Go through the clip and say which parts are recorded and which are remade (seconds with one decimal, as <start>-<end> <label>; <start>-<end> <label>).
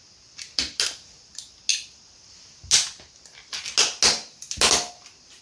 0.0-5.4 recorded